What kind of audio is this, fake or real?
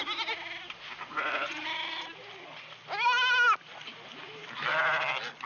real